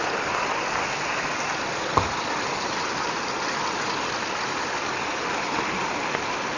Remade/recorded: recorded